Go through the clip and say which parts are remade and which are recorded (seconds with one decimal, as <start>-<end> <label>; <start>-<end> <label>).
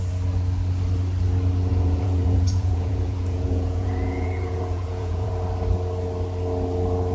0.0-1.7 recorded; 1.7-5.3 remade; 5.3-7.1 recorded